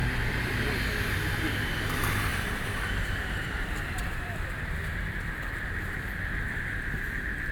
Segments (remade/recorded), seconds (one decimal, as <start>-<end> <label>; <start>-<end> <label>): 0.0-0.6 remade; 0.6-2.3 recorded; 2.3-4.7 remade; 4.7-7.5 recorded